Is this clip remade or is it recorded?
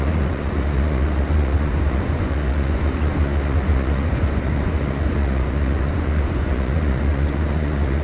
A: remade